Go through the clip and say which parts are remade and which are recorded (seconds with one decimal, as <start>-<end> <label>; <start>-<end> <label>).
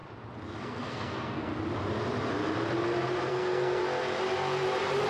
0.0-0.6 recorded; 0.6-1.5 remade; 1.5-3.3 recorded; 3.3-3.8 remade; 3.8-5.1 recorded